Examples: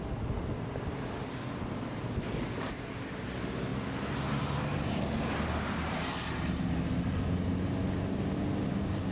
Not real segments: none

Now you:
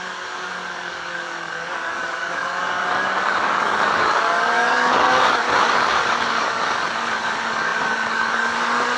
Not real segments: 0.0-9.0 (codec, DAC)

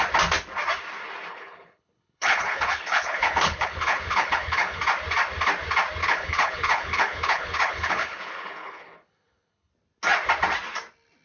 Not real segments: 1.3-4.8 (codec, HILCodec); 6.0-9.7

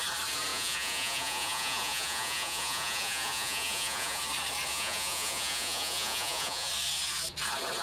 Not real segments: 0.5-4.2 (vocoder, Vocos); 4.7-6.7

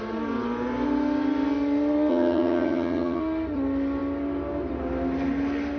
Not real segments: 2.1-3.2 (vocoder, HiFi-GAN)

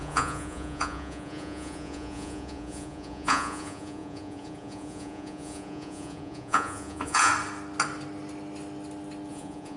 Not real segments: 0.0-7.3 (vocoder, Vocos); 9.3-9.8